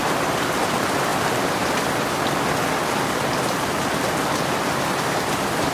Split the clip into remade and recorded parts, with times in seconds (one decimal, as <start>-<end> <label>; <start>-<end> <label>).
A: 0.0-1.1 remade; 1.1-4.5 recorded; 4.5-5.7 remade